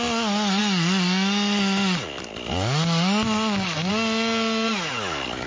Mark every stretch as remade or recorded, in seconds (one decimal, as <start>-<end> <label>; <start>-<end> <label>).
0.0-5.5 recorded